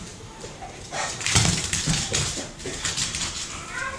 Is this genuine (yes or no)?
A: no